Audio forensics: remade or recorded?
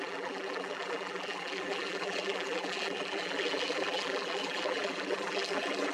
remade